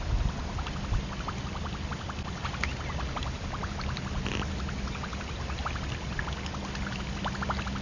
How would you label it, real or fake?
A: real